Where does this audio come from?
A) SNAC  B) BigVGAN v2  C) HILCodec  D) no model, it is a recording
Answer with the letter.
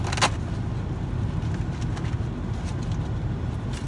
D